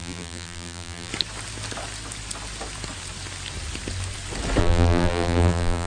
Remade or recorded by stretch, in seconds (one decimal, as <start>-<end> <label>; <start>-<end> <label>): 0.0-1.1 remade; 1.1-4.6 recorded; 4.6-5.9 remade

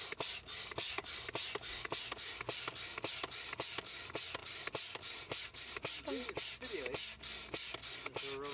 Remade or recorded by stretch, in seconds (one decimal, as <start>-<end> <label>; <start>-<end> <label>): 0.0-4.4 recorded; 4.4-6.0 remade; 6.0-8.5 recorded

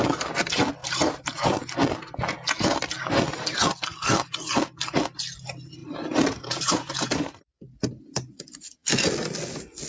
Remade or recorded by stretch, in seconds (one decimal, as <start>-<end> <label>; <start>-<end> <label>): 0.0-0.8 recorded; 0.8-1.6 remade; 1.6-5.8 recorded; 5.8-7.4 remade; 7.4-9.9 recorded

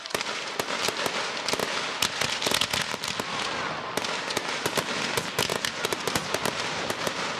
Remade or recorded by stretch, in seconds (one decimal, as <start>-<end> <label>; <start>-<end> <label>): 0.0-5.5 recorded; 5.5-6.9 remade; 6.9-7.4 recorded

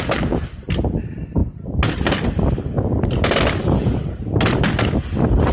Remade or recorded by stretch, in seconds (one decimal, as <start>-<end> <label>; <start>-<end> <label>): 0.0-1.4 remade; 1.4-4.6 recorded; 4.6-5.5 remade